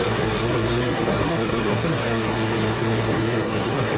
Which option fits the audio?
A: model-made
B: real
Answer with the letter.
A